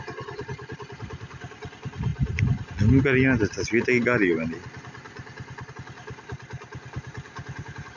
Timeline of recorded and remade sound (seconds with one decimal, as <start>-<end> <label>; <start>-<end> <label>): 0.0-8.0 recorded